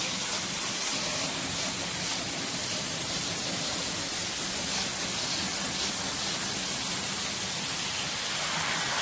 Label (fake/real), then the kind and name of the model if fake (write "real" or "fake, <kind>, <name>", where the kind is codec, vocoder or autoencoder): real